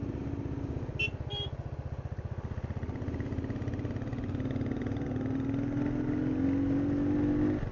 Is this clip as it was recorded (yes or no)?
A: yes